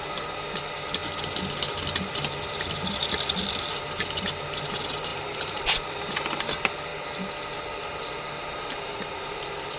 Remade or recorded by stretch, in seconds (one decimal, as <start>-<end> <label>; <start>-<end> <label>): 0.0-1.0 recorded; 1.0-4.0 remade; 4.0-5.1 recorded; 5.1-6.4 remade; 6.4-9.8 recorded